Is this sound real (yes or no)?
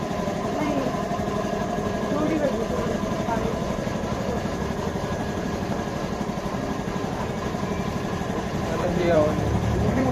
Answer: no